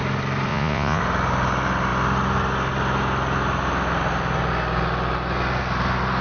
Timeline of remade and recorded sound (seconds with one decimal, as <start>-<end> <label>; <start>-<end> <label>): 0.0-0.5 recorded; 0.5-1.0 remade; 1.0-6.2 recorded